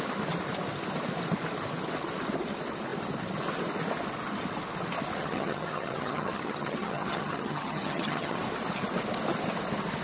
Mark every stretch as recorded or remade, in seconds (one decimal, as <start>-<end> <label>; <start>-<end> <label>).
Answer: 0.0-5.2 recorded; 5.2-8.4 remade; 8.4-10.0 recorded